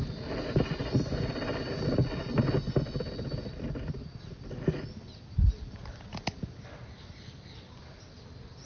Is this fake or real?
real